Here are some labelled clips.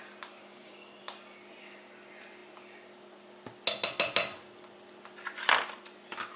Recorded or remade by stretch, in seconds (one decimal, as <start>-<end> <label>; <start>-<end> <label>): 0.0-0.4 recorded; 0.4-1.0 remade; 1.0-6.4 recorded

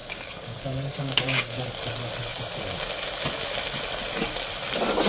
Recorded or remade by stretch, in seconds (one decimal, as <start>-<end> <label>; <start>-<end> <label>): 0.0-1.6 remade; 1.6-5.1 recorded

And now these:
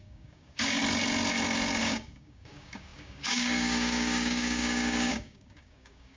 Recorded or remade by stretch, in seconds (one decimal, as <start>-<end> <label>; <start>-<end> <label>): 0.0-0.8 remade; 0.8-1.8 recorded; 1.8-6.2 remade